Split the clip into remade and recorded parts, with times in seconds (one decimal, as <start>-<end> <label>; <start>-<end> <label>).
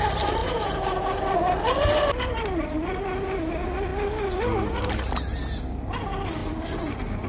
0.0-0.4 recorded; 0.4-1.4 remade; 1.4-6.4 recorded; 6.4-7.3 remade